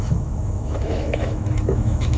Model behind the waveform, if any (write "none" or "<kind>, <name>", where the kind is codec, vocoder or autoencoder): autoencoder, DAC-VAE